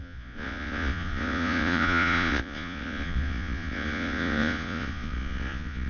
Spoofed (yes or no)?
yes